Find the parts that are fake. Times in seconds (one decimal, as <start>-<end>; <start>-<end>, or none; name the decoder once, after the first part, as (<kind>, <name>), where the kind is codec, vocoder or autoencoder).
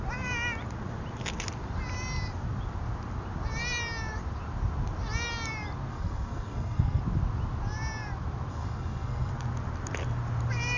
5.9-7.0 (codec, SNAC); 8.5-9.3